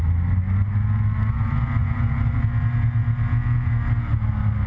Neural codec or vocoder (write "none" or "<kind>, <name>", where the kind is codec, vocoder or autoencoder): none